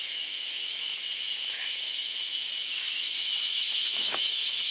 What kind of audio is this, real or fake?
fake